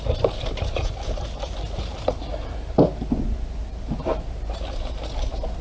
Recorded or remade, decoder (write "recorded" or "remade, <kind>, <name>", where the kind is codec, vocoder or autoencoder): recorded